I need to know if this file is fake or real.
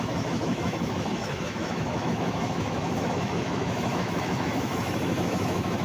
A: fake